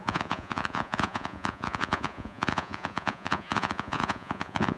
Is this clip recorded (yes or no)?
no